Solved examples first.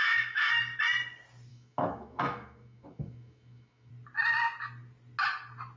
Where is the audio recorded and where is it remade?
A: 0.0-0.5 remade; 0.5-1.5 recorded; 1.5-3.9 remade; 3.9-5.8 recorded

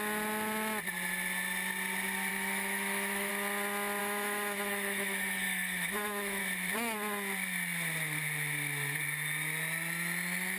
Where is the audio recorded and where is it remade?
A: 0.0-2.3 recorded; 2.3-3.3 remade; 3.3-4.0 recorded; 4.0-6.4 remade; 6.4-10.6 recorded

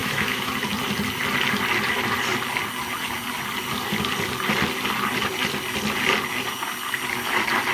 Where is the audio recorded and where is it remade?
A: 0.0-0.5 remade; 0.5-7.7 recorded

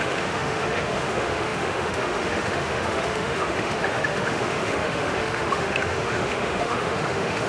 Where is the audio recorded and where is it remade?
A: 0.0-7.5 remade

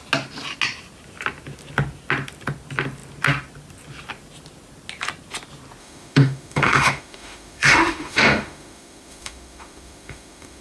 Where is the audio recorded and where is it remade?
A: 0.0-5.8 recorded; 5.8-10.6 remade

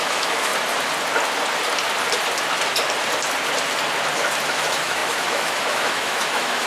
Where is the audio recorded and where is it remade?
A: 0.0-0.5 remade; 0.5-4.5 recorded; 4.5-6.7 remade

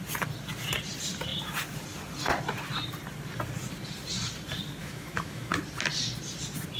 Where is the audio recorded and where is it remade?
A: 0.0-4.8 recorded; 4.8-5.5 remade; 5.5-6.8 recorded